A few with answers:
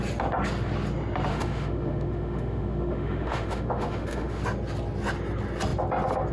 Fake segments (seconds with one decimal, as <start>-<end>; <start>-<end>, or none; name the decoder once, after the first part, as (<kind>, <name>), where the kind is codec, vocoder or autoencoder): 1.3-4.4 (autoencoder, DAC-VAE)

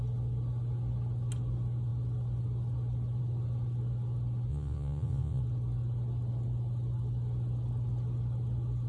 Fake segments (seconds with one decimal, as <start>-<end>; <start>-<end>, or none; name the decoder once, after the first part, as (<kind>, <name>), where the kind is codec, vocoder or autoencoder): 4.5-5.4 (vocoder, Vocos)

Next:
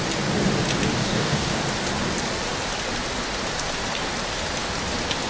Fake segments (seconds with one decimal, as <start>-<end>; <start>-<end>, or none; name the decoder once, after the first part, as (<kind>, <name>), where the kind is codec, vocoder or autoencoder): 0.9-1.6 (codec, DAC)

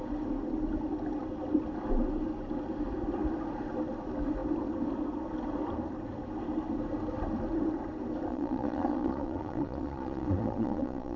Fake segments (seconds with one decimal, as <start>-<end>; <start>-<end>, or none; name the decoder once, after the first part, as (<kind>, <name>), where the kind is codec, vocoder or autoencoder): 8.3-11.2 (vocoder, Vocos)

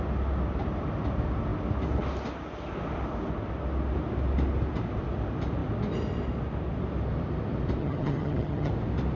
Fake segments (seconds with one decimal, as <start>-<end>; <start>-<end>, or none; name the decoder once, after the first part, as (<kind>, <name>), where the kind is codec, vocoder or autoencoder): 7.8-8.7 (vocoder, HiFi-GAN)

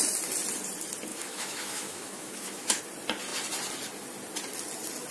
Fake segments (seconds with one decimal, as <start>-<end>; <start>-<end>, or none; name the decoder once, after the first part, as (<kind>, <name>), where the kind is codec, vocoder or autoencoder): 1.1-2.8 (autoencoder, DAC-VAE)